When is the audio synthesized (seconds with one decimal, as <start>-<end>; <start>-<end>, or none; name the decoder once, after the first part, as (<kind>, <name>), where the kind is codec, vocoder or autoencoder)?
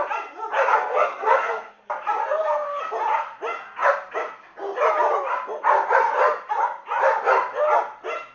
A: 0.7-1.8 (codec, SNAC); 2.2-2.8